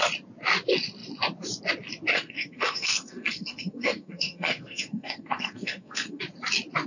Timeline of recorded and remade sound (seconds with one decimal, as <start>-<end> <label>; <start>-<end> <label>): 0.0-2.1 recorded; 2.1-6.2 remade; 6.2-6.9 recorded

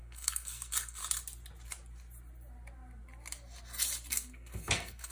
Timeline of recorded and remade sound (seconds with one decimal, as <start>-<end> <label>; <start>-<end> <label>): 0.0-1.0 remade; 1.0-4.1 recorded; 4.1-5.1 remade